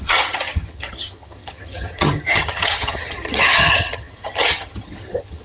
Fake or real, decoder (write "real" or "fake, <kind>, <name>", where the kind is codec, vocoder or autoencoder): fake, vocoder, HiFi-GAN